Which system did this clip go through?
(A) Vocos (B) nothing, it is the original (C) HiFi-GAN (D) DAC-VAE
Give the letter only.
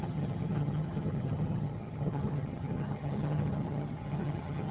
C